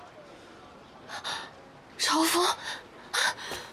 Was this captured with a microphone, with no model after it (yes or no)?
yes